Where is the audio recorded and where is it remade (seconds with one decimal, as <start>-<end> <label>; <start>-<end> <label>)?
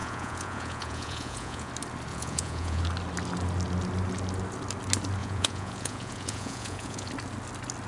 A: 0.0-1.7 remade; 1.7-2.1 recorded; 2.1-2.8 remade; 2.8-5.2 recorded; 5.2-7.1 remade; 7.1-7.9 recorded